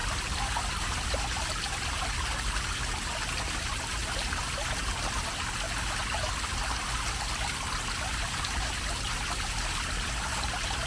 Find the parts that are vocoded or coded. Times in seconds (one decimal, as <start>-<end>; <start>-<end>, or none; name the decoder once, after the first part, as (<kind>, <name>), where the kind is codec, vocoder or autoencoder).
0.0-1.9 (vocoder, BigVGAN v2)